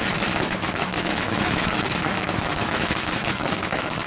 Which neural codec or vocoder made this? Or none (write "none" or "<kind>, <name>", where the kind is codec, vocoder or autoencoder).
autoencoder, DAC-VAE